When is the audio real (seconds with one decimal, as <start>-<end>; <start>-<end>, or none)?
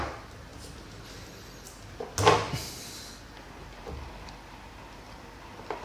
0.0-5.8